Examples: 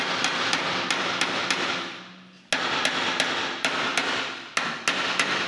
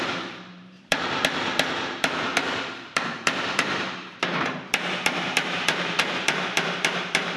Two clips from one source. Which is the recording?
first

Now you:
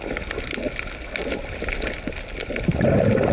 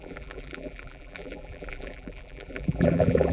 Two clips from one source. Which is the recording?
first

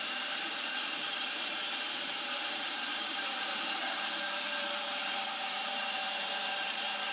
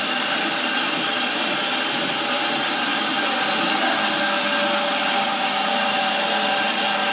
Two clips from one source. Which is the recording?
second